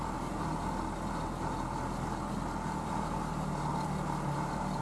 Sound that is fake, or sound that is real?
real